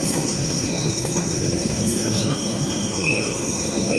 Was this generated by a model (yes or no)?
yes